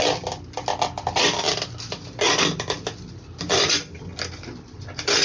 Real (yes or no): yes